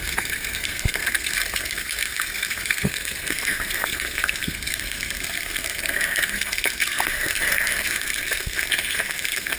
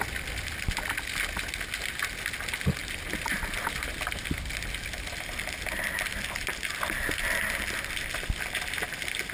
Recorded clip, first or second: second